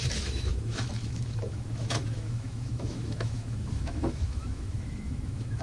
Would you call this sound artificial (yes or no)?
yes